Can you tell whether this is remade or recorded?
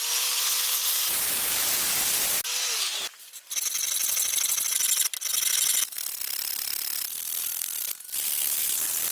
recorded